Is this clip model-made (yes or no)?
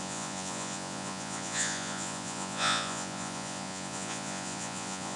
yes